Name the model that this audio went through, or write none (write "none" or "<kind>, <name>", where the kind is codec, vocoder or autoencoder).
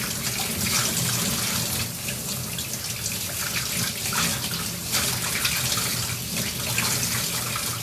none